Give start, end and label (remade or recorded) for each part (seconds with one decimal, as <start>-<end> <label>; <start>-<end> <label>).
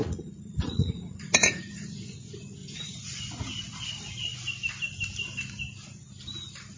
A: 0.0-2.1 remade; 2.1-2.6 recorded; 2.6-3.2 remade; 3.2-6.8 recorded